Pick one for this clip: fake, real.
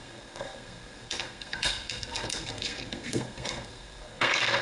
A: fake